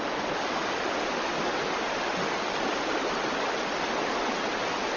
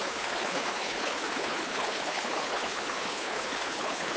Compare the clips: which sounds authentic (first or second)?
first